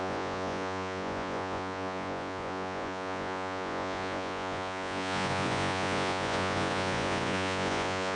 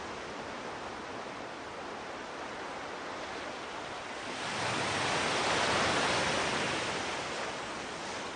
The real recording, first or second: second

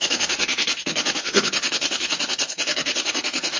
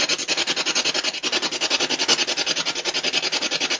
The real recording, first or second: second